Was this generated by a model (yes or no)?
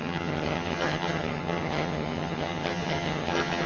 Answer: yes